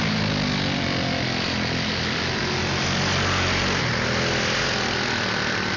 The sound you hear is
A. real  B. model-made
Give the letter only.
A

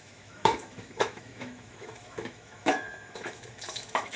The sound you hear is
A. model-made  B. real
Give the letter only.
A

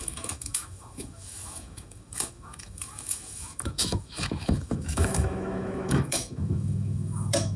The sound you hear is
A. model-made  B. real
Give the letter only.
A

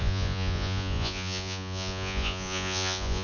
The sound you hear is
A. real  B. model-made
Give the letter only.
B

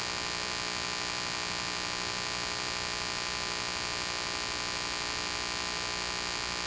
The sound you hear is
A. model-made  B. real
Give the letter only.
B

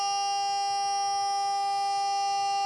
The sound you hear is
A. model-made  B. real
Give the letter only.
B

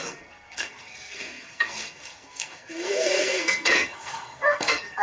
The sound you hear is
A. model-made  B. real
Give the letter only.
A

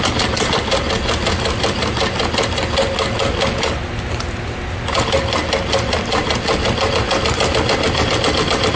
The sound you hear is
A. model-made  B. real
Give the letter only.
B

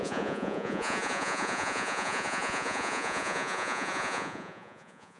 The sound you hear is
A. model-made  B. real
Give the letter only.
A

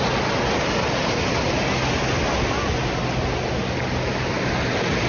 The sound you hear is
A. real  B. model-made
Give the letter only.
A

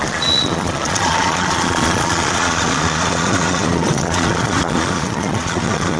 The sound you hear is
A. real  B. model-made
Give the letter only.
B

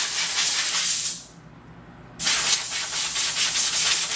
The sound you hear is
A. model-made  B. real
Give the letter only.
B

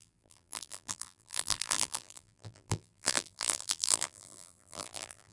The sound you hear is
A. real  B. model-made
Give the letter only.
B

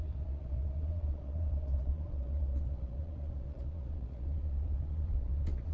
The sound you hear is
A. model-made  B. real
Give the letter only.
A